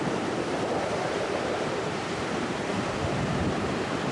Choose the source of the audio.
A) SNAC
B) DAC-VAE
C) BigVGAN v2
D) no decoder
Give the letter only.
C